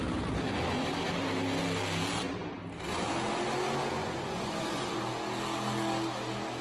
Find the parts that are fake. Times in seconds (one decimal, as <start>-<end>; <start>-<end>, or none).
4.0-5.0